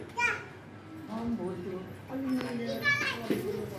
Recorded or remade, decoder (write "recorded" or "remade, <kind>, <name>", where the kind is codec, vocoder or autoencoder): recorded